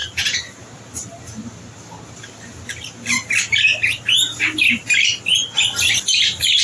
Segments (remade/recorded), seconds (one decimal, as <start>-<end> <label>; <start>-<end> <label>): 0.0-6.6 recorded